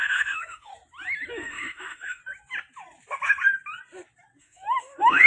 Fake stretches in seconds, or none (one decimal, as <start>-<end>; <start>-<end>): 0.0-0.7; 1.3-2.2; 4.4-5.3